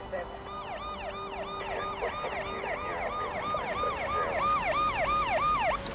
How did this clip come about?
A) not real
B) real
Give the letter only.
B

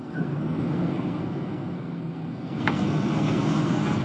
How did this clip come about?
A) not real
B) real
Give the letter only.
A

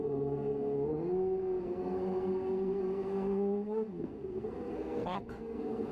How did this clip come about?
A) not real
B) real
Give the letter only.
A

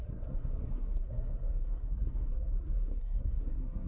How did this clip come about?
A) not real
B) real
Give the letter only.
A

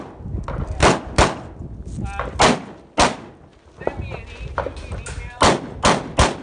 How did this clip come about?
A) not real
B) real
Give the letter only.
B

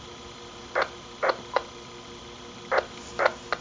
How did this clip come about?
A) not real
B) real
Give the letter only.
B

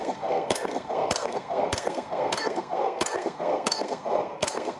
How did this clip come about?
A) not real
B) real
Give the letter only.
A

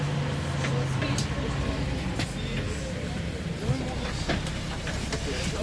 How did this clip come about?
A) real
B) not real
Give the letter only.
A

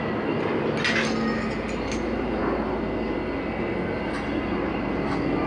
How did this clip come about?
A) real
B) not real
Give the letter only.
A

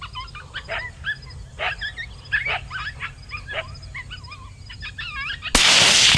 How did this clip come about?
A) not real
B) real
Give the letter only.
B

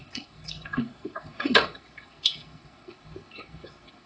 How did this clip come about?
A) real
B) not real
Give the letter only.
B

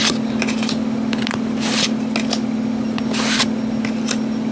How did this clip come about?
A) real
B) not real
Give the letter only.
A